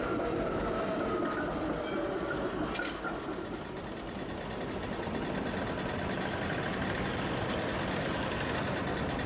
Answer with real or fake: real